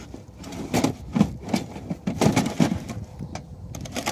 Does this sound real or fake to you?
real